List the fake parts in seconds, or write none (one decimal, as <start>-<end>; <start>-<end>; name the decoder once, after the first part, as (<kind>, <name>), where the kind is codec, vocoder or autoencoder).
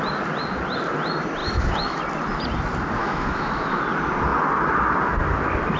1.4-2.0 (autoencoder, DAC-VAE); 3.0-3.8